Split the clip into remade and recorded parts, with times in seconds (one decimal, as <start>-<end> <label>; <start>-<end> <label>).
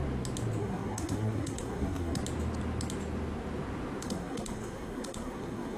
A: 0.0-0.6 recorded; 0.6-2.2 remade; 2.2-4.0 recorded; 4.0-5.8 remade